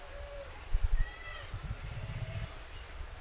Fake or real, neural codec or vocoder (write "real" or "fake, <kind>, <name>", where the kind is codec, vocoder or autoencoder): fake, vocoder, BigVGAN v2